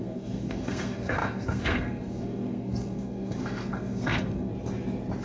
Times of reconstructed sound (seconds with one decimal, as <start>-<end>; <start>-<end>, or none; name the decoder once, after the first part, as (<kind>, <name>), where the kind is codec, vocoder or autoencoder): 0.0-4.5 (codec, SNAC)